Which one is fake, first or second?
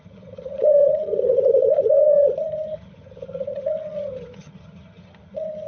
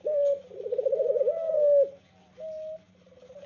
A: first